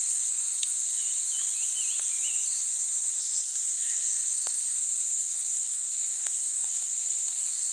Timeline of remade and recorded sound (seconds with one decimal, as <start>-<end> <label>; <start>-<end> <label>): 0.0-1.0 remade; 1.0-3.1 recorded; 3.1-7.7 remade